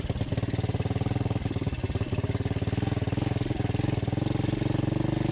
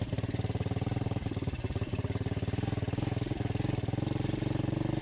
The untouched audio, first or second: first